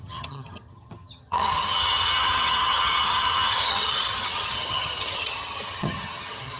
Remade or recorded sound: remade